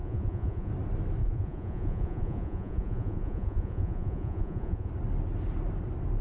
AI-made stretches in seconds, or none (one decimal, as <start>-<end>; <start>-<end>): 0.0-0.7; 1.2-4.9